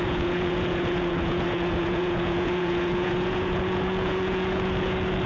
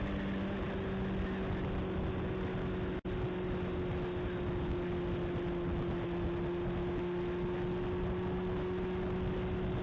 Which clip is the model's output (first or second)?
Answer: first